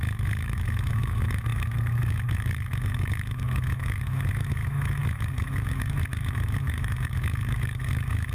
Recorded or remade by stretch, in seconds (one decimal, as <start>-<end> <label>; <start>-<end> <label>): 0.0-8.3 remade